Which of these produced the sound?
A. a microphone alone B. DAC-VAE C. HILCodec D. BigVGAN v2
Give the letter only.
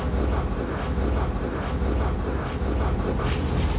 A